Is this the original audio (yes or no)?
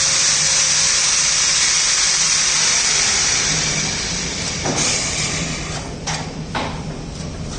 no